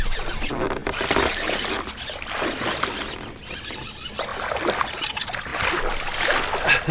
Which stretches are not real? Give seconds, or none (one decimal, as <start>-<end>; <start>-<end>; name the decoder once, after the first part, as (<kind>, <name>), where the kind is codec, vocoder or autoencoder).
none